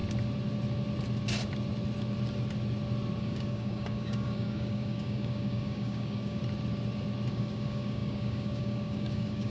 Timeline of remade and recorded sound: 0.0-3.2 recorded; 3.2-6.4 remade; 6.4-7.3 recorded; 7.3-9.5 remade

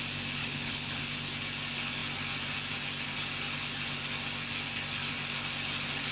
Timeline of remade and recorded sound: 0.0-0.4 recorded; 0.4-1.0 remade; 1.0-6.1 recorded

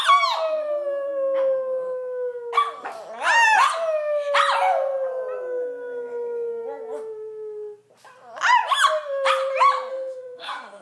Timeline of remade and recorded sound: 0.0-9.9 recorded; 9.9-10.8 remade

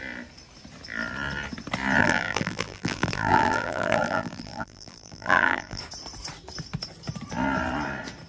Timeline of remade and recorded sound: 0.0-2.0 recorded; 2.0-5.8 remade; 5.8-8.3 recorded

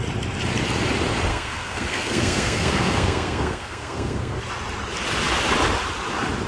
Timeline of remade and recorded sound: 0.0-1.3 recorded; 1.3-4.4 remade; 4.4-6.5 recorded